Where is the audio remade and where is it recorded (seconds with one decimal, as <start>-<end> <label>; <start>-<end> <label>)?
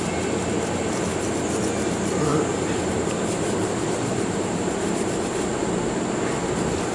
0.0-2.3 recorded; 2.3-5.7 remade; 5.7-6.9 recorded